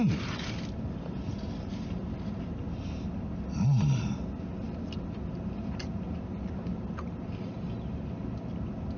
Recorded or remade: recorded